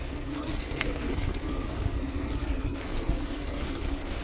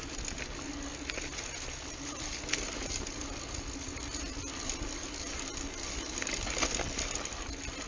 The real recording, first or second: second